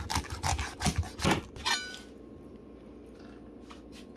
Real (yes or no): yes